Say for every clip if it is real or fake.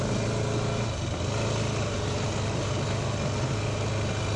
real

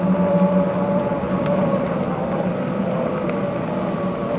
real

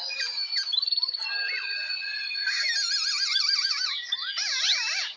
real